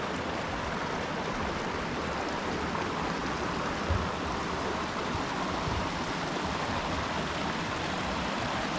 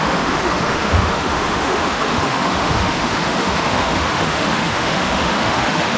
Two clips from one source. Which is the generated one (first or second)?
second